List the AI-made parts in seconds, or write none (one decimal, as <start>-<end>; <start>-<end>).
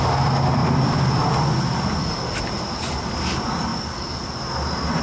none